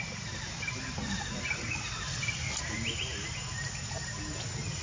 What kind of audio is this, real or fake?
real